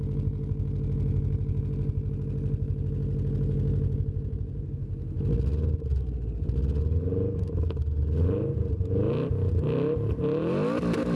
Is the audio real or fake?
real